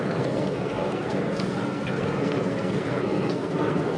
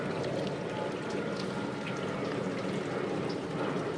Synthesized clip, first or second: first